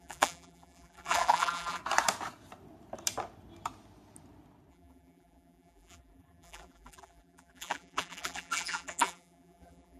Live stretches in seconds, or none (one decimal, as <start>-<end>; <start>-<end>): 1.8-4.7